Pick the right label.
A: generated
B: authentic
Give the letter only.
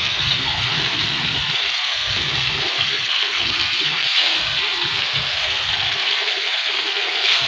A